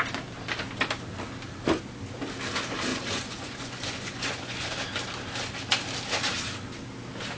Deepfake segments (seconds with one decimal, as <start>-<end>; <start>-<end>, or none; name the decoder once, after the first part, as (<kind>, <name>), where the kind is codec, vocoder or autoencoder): 2.9-4.7 (vocoder, Vocos)